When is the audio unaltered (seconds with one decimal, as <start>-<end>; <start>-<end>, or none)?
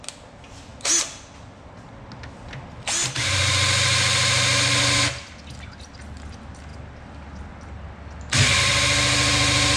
0.0-9.8